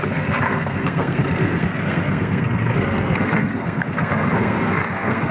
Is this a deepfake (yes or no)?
yes